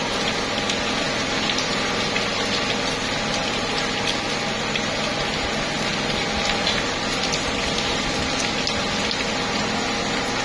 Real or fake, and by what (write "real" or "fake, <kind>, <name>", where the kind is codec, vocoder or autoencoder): real